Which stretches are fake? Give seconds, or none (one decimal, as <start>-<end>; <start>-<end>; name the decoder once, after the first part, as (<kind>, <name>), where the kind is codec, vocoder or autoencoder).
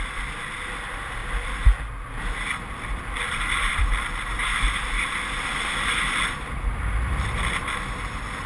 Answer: none